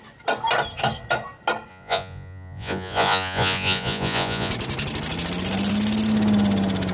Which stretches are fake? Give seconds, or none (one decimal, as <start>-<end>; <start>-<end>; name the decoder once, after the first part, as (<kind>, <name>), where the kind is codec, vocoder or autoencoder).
1.7-4.5 (vocoder, Vocos)